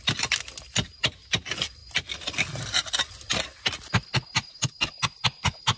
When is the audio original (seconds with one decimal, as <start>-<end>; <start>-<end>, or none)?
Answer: 0.0-5.8